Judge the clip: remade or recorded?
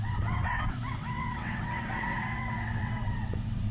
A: remade